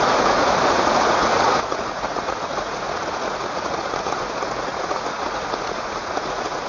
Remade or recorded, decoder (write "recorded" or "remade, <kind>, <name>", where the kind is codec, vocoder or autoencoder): remade, vocoder, Vocos